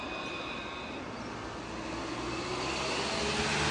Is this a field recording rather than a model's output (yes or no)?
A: yes